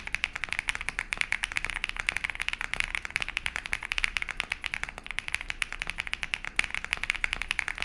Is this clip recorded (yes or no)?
yes